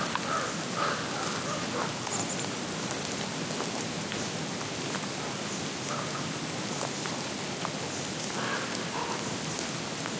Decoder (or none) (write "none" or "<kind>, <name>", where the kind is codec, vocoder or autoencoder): none